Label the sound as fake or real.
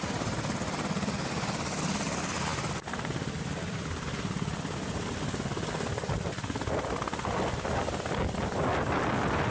real